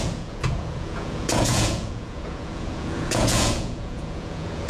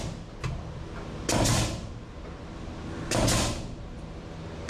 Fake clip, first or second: first